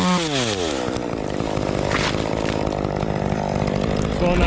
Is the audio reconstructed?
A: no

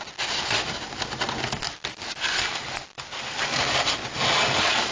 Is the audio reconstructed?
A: no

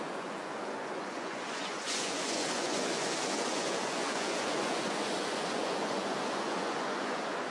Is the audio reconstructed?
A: yes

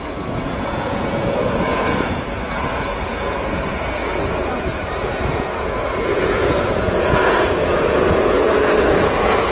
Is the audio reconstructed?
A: yes